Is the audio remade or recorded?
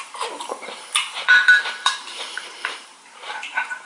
remade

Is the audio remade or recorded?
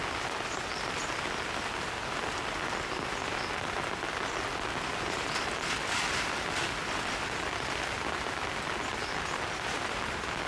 recorded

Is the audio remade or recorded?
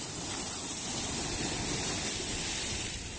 remade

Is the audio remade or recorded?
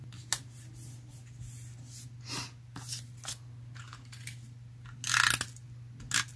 recorded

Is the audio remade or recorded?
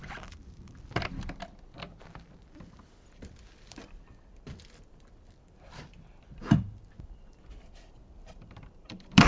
remade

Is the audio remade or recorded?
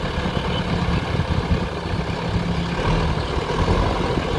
recorded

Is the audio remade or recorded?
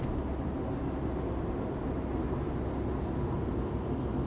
recorded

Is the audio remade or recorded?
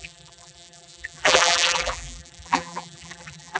remade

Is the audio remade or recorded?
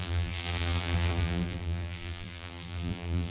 remade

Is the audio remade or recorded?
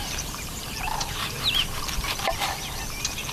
remade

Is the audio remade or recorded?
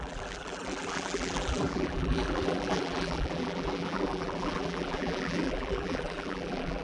remade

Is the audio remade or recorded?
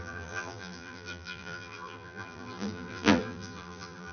remade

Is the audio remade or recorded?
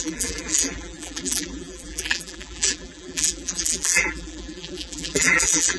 remade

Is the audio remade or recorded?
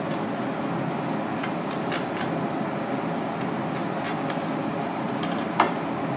recorded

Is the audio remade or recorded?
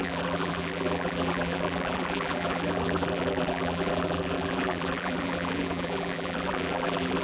remade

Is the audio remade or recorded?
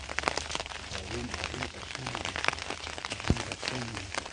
remade